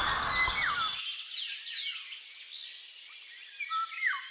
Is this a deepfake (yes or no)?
no